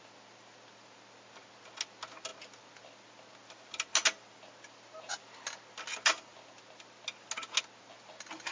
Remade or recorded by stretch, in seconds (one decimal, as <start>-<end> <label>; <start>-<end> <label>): 0.0-8.5 recorded